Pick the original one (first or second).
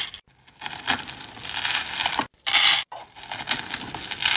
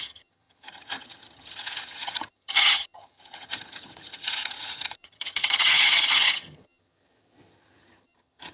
first